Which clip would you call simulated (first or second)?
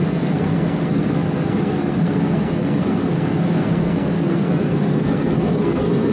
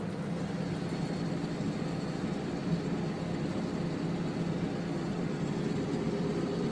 first